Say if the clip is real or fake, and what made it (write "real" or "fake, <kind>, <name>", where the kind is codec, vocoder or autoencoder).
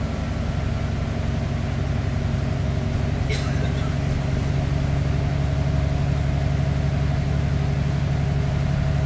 real